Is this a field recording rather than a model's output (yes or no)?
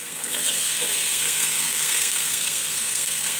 no